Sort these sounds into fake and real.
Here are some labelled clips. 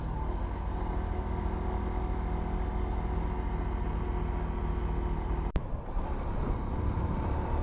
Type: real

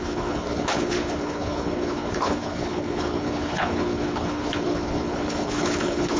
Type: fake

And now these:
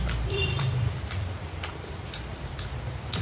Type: fake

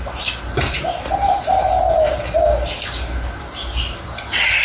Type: real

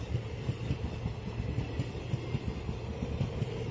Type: real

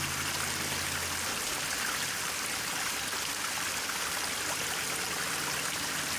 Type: real